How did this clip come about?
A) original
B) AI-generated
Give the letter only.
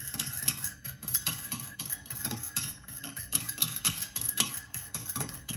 B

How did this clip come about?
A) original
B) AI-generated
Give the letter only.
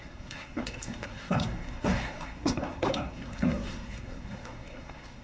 B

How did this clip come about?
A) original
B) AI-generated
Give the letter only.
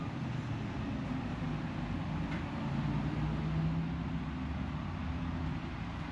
A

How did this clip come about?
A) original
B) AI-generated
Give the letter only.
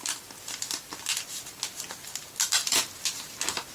A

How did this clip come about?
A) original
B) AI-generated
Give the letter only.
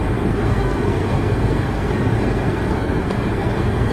B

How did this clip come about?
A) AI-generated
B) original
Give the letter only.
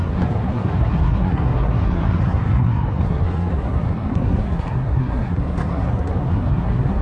A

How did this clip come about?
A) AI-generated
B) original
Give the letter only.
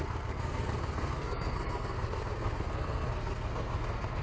A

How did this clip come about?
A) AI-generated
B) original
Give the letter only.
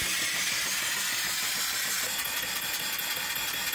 B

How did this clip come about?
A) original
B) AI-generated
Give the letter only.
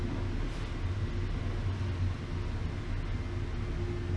A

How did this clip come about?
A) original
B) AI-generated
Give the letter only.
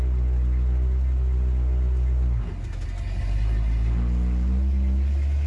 A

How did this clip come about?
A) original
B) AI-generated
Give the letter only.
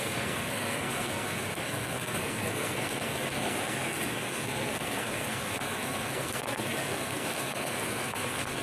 B